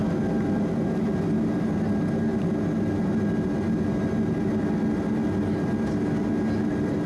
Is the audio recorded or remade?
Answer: recorded